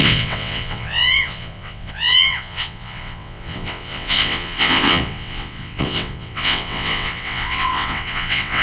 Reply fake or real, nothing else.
fake